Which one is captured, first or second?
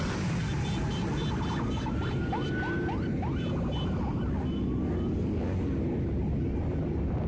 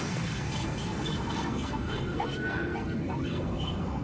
first